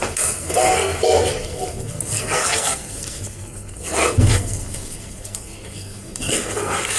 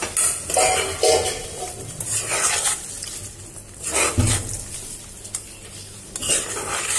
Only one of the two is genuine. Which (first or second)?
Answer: second